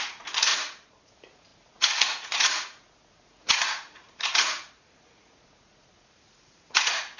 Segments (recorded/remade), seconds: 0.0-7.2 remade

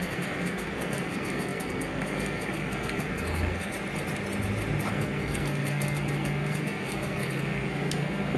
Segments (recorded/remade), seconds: 0.0-3.7 remade; 3.7-4.9 recorded; 4.9-8.4 remade

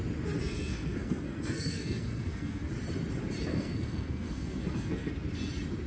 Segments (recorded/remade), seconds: 0.0-0.4 recorded; 0.4-2.7 remade; 2.7-3.5 recorded; 3.5-5.1 remade; 5.1-5.9 recorded